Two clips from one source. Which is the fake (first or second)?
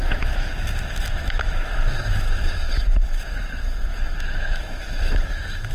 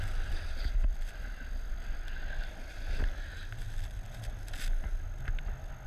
first